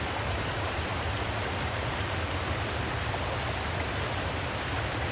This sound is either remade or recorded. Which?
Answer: recorded